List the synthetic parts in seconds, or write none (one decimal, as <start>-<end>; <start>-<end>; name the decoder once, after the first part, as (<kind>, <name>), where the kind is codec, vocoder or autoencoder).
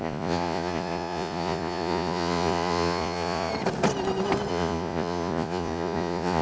0.0-3.5 (vocoder, Vocos); 4.5-6.4